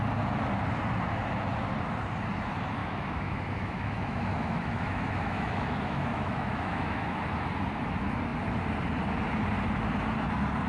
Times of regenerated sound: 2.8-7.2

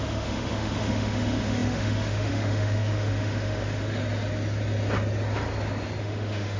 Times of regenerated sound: 0.0-4.0; 6.0-6.6

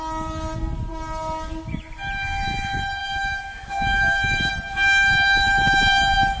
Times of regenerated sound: 3.0-4.5

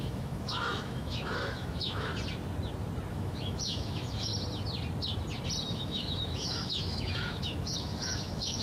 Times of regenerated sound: 0.0-2.1; 3.1-4.3; 5.7-8.6